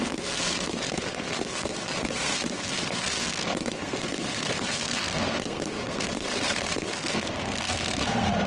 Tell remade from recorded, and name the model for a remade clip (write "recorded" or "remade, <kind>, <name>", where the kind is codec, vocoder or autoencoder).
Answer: remade, codec, SNAC